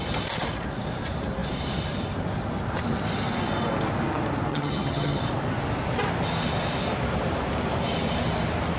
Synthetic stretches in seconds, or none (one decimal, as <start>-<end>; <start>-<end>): 4.5-5.2

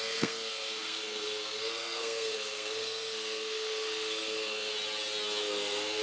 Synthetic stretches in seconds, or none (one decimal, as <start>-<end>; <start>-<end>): 0.0-4.7; 5.4-6.0